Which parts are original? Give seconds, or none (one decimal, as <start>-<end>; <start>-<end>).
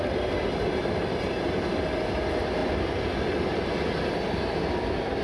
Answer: 0.0-5.2